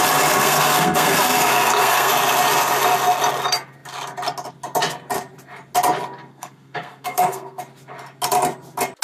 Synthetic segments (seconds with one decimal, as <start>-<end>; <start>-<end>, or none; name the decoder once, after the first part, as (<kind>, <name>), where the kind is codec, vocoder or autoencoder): 0.4-2.1 (codec, SNAC); 6.3-7.6